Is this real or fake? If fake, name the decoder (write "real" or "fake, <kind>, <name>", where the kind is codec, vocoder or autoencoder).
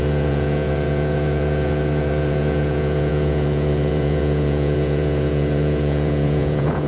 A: fake, vocoder, Vocos